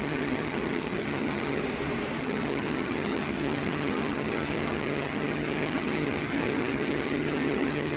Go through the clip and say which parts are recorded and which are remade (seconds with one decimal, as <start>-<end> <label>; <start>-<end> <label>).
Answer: 0.0-1.6 remade; 1.6-2.2 recorded; 2.2-8.0 remade